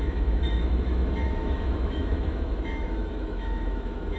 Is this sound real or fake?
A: fake